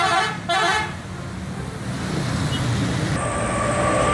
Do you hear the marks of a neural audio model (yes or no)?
no